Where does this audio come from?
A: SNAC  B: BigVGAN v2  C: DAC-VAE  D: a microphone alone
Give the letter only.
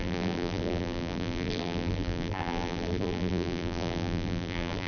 B